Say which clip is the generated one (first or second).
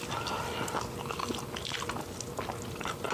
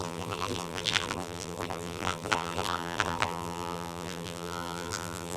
second